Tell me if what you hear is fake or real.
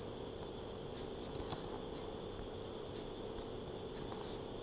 real